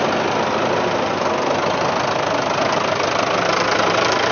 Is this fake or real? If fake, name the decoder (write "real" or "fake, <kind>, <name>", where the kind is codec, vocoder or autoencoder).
real